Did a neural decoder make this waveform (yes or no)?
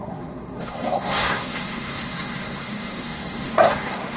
yes